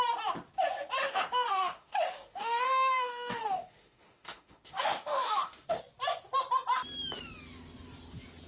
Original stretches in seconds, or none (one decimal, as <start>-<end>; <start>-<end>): 0.0-1.0; 5.8-8.5